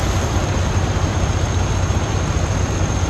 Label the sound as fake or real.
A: real